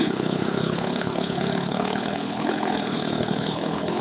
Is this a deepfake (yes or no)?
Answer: yes